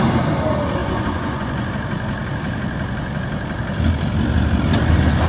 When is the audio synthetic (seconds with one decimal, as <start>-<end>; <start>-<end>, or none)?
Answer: 0.8-1.7